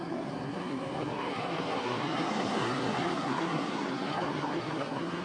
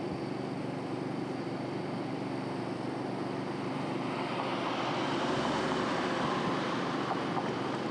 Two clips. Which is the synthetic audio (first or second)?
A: first